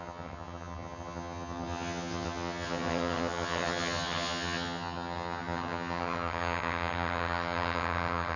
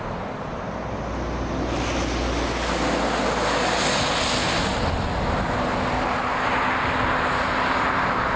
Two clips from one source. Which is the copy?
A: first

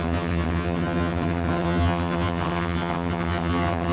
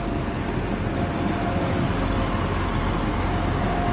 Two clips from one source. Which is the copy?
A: first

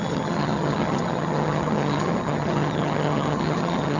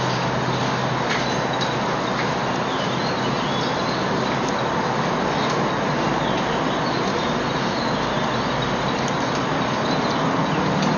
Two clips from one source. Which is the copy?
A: first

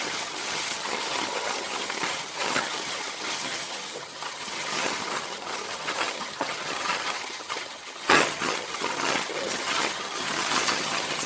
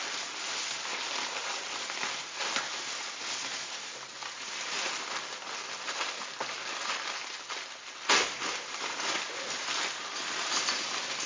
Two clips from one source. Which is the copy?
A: first